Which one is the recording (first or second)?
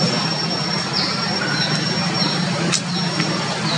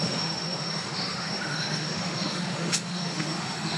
first